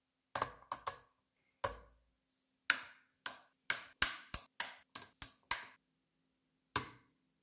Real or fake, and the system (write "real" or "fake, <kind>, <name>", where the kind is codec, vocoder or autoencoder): real